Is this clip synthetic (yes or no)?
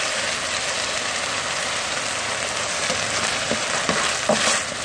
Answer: no